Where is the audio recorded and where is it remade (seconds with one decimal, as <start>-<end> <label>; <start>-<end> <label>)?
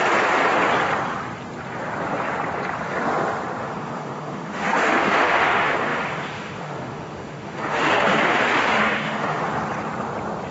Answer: 0.0-3.6 recorded; 3.6-9.5 remade; 9.5-10.5 recorded